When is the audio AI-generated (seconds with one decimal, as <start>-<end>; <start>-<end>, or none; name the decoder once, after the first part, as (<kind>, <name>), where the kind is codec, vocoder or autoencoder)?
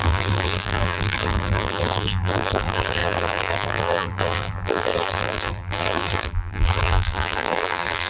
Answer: 0.0-8.1 (vocoder, BigVGAN v2)